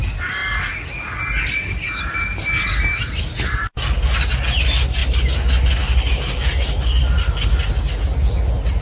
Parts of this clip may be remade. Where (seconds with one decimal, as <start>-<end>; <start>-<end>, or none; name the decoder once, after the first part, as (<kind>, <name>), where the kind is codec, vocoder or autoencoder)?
none